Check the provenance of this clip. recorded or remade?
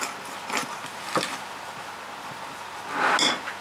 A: recorded